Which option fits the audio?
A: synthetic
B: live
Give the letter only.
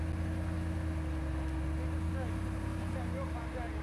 B